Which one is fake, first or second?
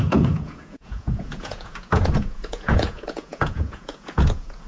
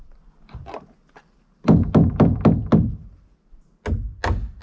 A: first